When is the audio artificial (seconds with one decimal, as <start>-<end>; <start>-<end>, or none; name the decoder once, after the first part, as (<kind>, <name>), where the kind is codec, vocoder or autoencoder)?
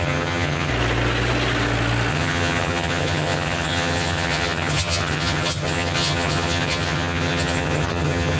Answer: 0.0-0.7 (vocoder, HiFi-GAN); 2.1-8.4